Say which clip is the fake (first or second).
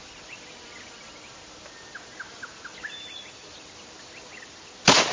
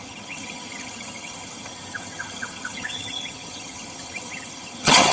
second